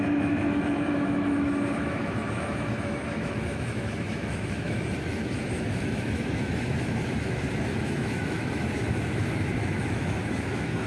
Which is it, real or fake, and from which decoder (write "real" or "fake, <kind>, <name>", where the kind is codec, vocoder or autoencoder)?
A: fake, autoencoder, DAC-VAE